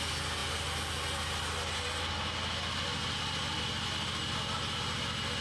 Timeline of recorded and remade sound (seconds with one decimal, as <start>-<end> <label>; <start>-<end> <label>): 0.0-5.4 recorded